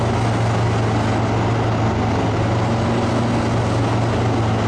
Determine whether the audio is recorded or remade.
recorded